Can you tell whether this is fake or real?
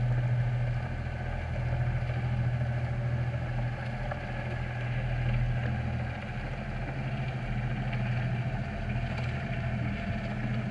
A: real